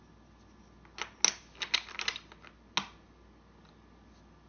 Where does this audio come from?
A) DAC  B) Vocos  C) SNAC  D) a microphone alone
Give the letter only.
D